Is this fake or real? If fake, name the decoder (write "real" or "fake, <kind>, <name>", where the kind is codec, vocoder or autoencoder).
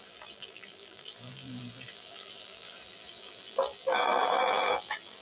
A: fake, vocoder, BigVGAN v2